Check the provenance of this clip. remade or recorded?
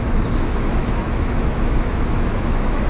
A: remade